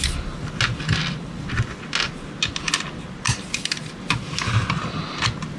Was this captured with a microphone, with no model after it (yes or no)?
yes